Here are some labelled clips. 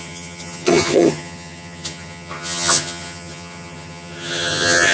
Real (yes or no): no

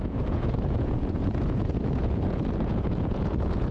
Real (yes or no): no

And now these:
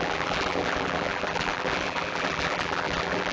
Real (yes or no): no